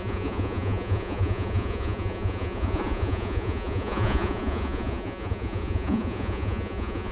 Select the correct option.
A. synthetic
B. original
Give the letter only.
A